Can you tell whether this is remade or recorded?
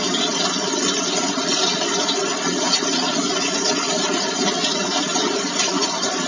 remade